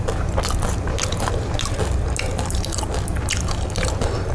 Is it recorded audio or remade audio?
recorded